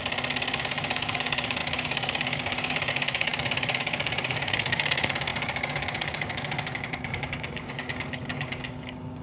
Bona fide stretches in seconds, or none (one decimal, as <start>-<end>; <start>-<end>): 0.0-0.6